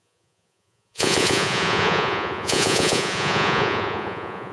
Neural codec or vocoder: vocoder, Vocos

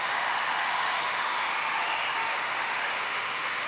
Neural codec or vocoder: autoencoder, DAC-VAE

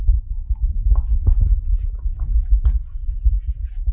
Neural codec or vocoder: none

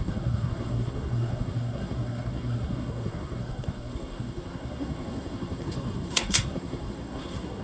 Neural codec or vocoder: codec, SNAC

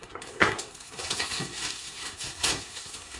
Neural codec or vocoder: codec, SNAC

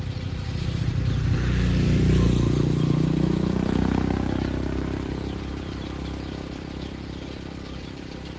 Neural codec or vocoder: vocoder, BigVGAN v2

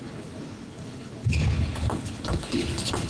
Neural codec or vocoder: codec, HILCodec